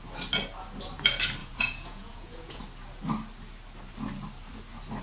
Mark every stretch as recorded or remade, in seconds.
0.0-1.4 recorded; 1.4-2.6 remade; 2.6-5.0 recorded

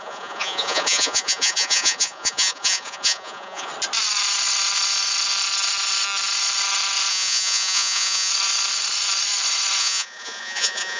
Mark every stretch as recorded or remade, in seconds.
0.0-3.7 remade; 3.7-7.1 recorded; 7.1-8.3 remade; 8.3-9.8 recorded; 9.8-11.0 remade

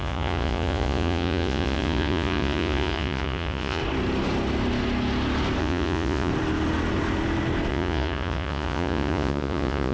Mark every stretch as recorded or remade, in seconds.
0.0-3.8 remade; 3.8-5.6 recorded; 5.6-6.3 remade; 6.3-7.7 recorded; 7.7-9.9 remade